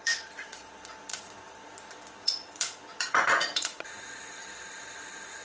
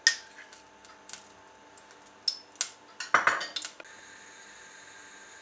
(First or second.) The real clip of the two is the second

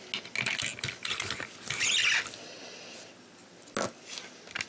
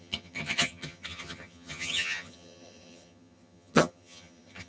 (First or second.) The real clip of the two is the first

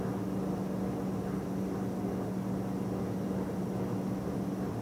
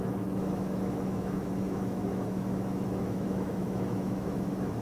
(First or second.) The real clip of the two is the first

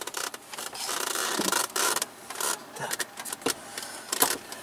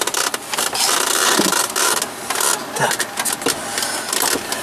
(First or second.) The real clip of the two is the second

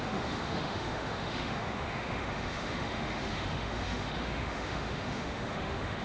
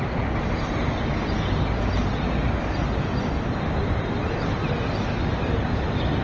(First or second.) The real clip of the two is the second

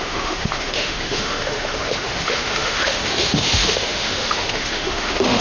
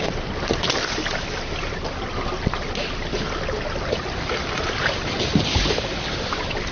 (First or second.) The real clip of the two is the second